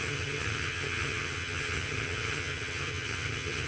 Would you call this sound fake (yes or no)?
yes